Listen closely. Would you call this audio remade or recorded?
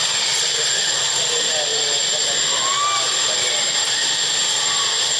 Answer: recorded